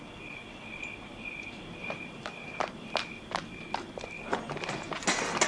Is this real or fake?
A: real